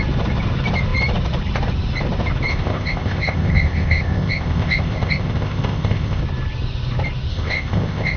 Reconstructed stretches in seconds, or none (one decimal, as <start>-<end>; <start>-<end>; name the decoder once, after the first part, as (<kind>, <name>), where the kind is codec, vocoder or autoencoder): 2.5-6.2 (codec, ZipCodec); 7.3-8.2